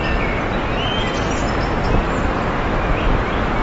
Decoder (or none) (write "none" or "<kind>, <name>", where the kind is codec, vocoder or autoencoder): none